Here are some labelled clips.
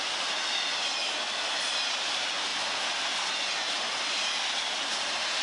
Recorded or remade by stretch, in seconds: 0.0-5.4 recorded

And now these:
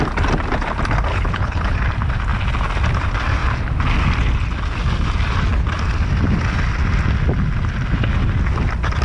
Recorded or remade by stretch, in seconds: 0.0-1.1 recorded; 1.1-1.8 remade; 1.8-9.0 recorded

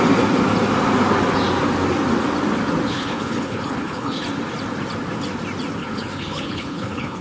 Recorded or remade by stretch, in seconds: 0.0-2.9 recorded; 2.9-4.2 remade; 4.2-5.8 recorded; 5.8-7.2 remade

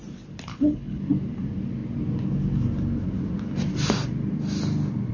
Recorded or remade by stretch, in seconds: 0.0-0.5 recorded; 0.5-1.0 remade; 1.0-5.1 recorded

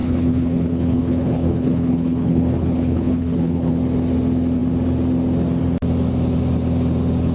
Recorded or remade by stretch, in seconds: 0.0-3.7 remade; 3.7-7.3 recorded